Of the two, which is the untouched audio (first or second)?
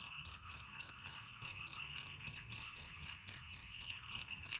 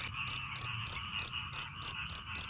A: second